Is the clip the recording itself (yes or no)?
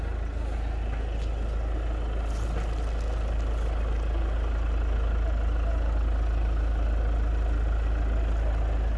yes